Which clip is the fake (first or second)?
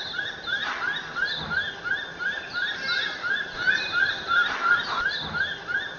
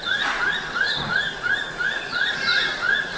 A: second